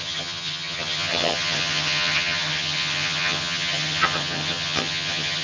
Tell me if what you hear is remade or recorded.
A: remade